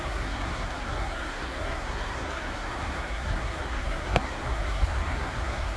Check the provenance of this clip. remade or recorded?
remade